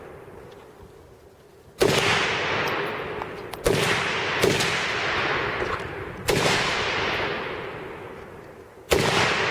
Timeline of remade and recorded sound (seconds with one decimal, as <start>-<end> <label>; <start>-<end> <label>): 0.0-5.0 recorded; 5.0-6.9 remade; 6.9-9.5 recorded